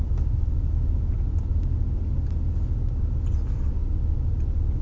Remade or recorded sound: recorded